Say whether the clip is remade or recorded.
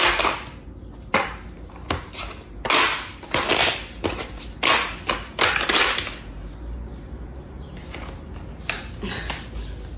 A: recorded